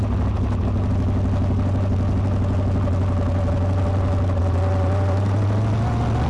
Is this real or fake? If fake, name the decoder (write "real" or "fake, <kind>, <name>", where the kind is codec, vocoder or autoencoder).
real